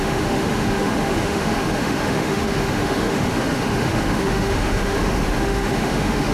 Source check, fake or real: fake